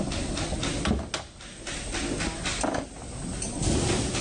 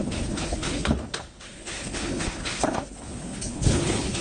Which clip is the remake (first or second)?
second